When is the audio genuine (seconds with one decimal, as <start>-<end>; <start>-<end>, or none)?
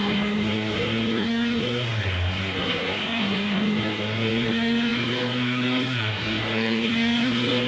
none